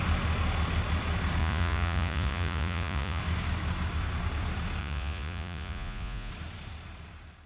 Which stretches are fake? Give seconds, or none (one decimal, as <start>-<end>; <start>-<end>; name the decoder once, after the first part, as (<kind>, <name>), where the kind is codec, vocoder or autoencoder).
1.4-3.2 (vocoder, Vocos); 4.8-6.3